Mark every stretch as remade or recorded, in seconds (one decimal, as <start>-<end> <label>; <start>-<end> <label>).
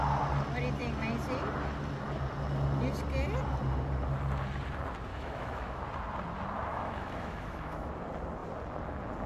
0.0-5.1 recorded; 5.1-5.8 remade; 5.8-6.7 recorded; 6.7-7.9 remade; 7.9-9.3 recorded